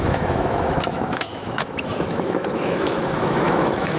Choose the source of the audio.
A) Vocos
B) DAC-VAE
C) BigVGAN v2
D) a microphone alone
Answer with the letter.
B